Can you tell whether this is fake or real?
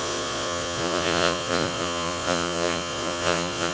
fake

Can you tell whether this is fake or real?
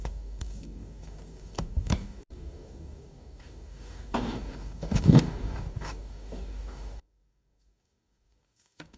fake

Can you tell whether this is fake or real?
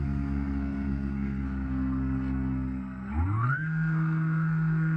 fake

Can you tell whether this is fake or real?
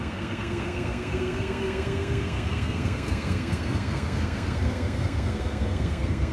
fake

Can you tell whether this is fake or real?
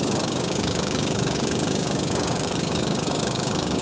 fake